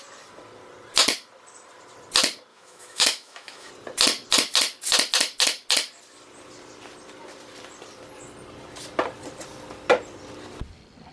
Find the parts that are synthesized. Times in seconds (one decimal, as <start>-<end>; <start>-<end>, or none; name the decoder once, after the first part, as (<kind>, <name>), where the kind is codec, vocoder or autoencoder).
2.5-3.7 (autoencoder, DAC-VAE)